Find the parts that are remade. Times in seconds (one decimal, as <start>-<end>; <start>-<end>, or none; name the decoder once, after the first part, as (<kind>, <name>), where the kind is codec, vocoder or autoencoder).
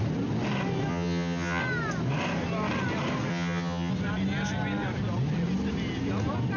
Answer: 0.9-1.6 (vocoder, HiFi-GAN); 3.3-3.9